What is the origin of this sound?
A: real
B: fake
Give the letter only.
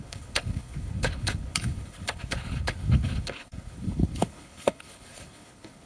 B